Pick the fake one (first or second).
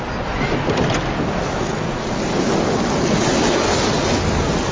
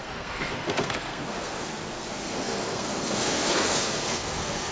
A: second